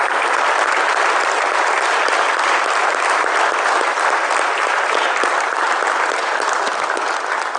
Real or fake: fake